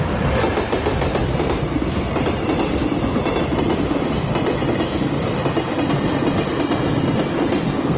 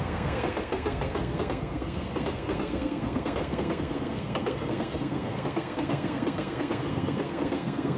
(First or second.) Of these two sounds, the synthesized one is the second